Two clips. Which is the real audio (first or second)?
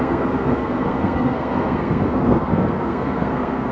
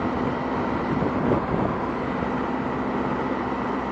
second